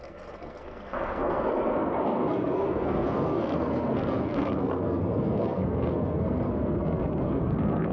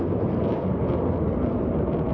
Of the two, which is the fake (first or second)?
first